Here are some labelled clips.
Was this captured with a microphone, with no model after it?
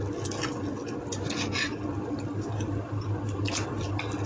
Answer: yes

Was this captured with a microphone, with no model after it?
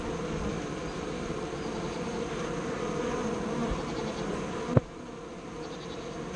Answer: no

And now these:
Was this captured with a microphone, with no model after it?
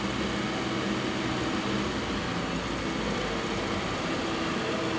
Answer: yes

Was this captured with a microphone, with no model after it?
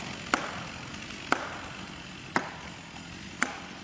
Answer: yes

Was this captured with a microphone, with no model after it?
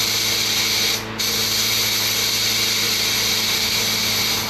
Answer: yes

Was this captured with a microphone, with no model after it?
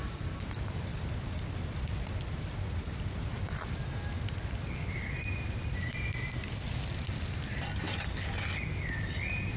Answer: no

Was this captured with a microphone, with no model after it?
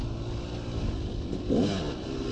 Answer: yes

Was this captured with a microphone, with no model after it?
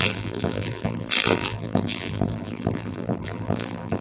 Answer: no